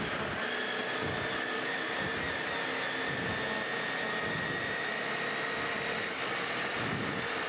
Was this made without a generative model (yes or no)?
yes